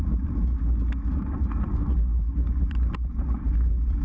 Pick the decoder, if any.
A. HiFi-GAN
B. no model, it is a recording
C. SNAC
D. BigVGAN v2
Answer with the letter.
B